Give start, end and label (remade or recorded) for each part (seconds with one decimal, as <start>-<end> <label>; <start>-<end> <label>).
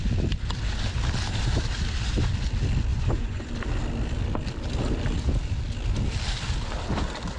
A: 0.0-2.9 recorded; 2.9-3.5 remade; 3.5-7.4 recorded